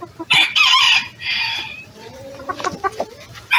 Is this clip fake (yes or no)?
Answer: yes